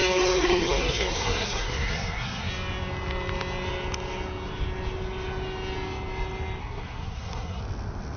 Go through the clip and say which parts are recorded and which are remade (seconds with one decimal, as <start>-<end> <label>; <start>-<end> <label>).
0.0-2.5 remade; 2.5-6.6 recorded; 6.6-7.6 remade; 7.6-8.2 recorded